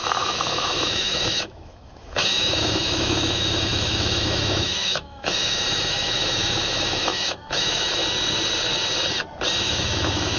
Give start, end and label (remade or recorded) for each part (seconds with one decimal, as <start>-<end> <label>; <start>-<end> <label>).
0.0-8.0 remade; 8.0-9.6 recorded; 9.6-10.4 remade